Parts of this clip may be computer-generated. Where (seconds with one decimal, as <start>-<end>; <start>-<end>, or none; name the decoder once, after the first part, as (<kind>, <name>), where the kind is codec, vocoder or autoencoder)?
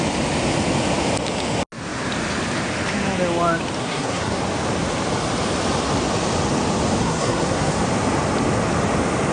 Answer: 3.8-4.4 (codec, SNAC); 7.0-7.8